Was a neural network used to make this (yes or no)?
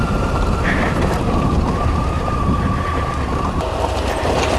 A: yes